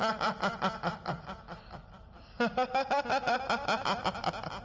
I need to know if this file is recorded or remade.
recorded